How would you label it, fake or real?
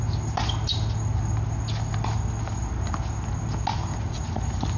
real